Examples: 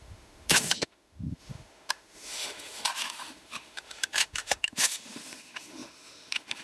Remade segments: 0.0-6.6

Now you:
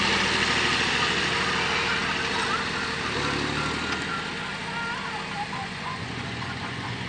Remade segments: 5.6-7.1